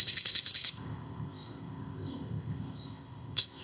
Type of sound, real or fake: fake